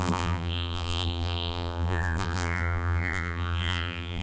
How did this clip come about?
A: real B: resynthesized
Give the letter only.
B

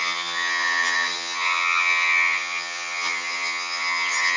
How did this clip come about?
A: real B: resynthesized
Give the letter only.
B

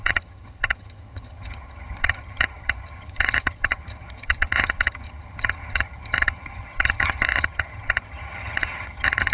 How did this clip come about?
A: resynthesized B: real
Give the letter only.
A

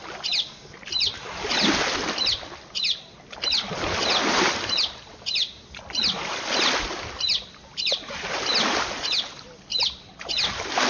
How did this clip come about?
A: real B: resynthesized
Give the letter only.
A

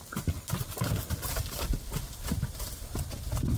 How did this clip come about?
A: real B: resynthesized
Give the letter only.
B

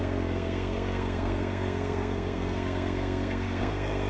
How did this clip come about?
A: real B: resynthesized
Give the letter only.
B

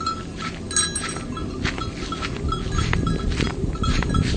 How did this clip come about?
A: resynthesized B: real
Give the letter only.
B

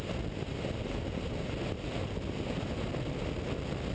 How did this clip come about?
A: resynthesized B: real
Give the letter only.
B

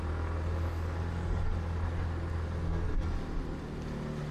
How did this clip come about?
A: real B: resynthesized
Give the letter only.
A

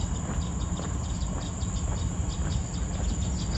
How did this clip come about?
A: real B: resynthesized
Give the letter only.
A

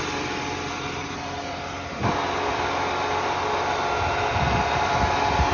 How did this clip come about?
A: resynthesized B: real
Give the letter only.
B